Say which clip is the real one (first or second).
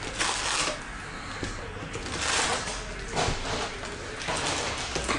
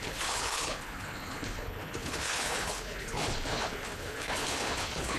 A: first